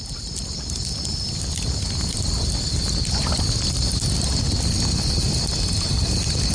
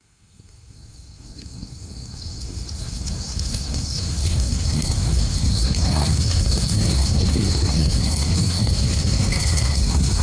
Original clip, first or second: first